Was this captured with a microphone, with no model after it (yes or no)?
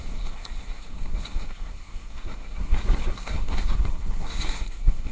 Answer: no